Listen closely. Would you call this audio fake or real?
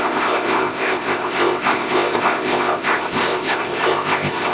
fake